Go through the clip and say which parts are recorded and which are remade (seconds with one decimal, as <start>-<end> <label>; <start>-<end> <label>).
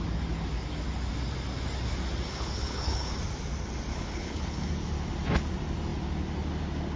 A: 0.0-2.3 recorded; 2.3-3.1 remade; 3.1-3.9 recorded; 3.9-4.7 remade; 4.7-7.0 recorded